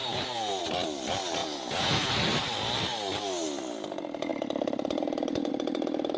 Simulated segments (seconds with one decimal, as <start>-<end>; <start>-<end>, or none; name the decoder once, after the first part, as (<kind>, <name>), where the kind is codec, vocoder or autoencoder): 0.0-0.6 (vocoder, Vocos); 1.4-2.1